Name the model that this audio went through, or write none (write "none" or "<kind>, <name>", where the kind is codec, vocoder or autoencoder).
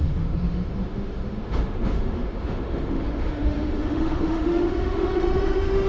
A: autoencoder, DAC-VAE